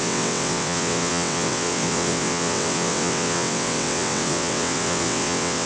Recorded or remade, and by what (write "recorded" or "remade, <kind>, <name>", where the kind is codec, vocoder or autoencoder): remade, vocoder, WaveNeXt